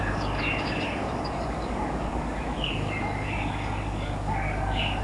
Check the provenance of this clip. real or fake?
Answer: fake